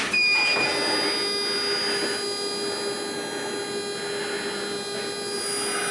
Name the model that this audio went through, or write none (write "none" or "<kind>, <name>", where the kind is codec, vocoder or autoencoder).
none